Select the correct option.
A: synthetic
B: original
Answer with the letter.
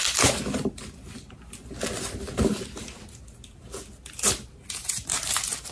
B